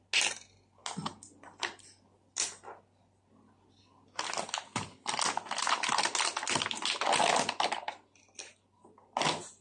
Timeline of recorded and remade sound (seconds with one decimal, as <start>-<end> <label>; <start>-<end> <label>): 0.0-9.6 recorded